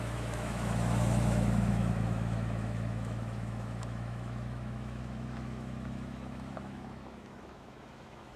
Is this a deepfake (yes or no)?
yes